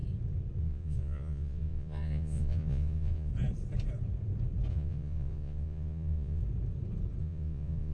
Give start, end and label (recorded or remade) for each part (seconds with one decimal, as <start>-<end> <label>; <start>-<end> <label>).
0.0-0.6 recorded; 0.6-3.3 remade; 3.3-4.7 recorded; 4.7-6.4 remade; 6.4-7.2 recorded; 7.2-7.9 remade